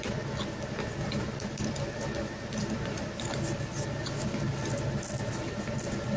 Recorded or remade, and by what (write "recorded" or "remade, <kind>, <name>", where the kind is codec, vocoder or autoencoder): recorded